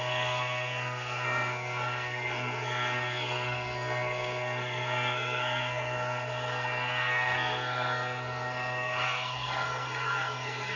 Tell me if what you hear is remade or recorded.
remade